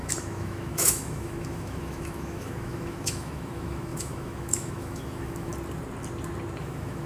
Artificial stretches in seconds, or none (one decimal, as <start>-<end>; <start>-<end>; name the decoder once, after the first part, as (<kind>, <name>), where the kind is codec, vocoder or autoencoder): 0.0-5.5 (autoencoder, DAC-VAE); 6.6-7.1